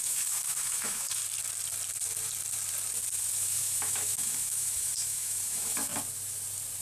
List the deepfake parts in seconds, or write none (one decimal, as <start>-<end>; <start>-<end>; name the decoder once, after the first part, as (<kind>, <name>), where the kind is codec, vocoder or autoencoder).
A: 0.0-1.2 (autoencoder, DAC-VAE); 3.3-5.9

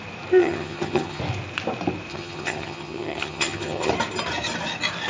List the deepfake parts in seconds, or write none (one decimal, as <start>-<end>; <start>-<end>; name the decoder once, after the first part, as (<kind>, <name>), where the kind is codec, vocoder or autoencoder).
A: 0.4-1.2 (vocoder, HiFi-GAN); 2.1-3.9

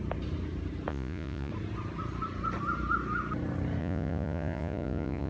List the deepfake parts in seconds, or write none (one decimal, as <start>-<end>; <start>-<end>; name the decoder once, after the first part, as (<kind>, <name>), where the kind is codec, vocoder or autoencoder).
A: 0.9-1.5 (vocoder, Vocos); 3.8-5.3